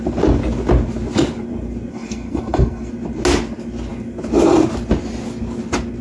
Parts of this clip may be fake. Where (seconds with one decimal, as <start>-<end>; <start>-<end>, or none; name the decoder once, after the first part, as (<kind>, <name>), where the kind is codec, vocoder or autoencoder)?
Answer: 1.9-2.9 (codec, SNAC)